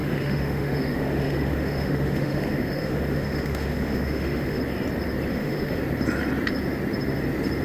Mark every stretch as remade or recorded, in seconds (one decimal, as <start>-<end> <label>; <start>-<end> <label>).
0.0-4.6 remade; 4.6-5.3 recorded; 5.3-5.8 remade; 5.8-7.6 recorded

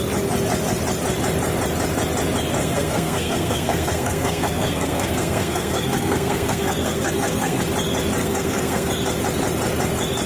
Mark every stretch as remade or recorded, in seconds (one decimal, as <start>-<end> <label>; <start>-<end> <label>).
0.0-2.6 recorded; 2.6-7.6 remade; 7.6-8.2 recorded; 8.2-8.9 remade; 8.9-10.3 recorded